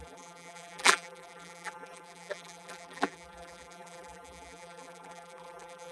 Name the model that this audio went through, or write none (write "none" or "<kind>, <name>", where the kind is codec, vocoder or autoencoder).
vocoder, BigVGAN v2